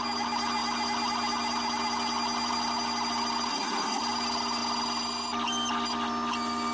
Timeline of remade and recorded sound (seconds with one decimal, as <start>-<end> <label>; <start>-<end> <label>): 0.0-3.5 recorded; 3.5-4.0 remade; 4.0-6.7 recorded